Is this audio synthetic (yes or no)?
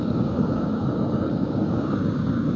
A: yes